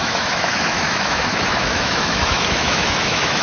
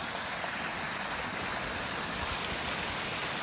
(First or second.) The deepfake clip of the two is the first